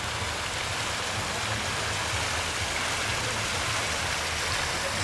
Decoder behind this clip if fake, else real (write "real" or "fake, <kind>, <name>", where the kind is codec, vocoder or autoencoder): real